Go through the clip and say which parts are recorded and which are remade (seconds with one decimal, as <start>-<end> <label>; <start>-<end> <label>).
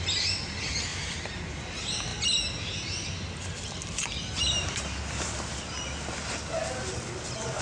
0.0-7.6 recorded